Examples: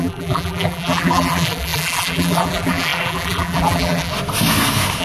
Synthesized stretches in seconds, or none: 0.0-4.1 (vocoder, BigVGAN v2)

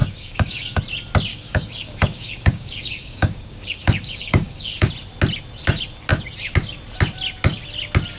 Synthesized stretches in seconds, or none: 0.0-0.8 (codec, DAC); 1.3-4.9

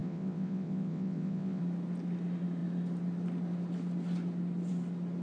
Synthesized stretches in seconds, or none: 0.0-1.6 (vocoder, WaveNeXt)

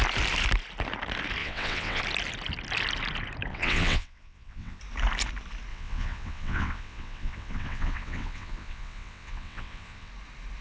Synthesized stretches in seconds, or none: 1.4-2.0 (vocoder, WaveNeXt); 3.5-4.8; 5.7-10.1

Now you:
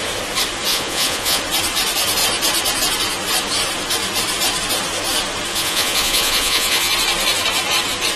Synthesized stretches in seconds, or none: 0.7-1.4 (vocoder, Vocos); 5.5-6.9

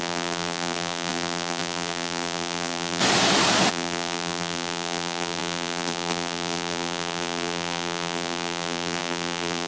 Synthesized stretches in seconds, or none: 0.0-3.0 (vocoder, BigVGAN v2); 3.7-9.7